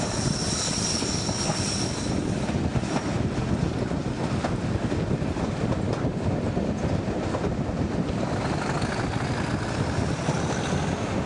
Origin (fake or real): real